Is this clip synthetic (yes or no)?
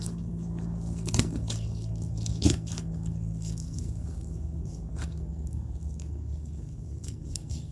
yes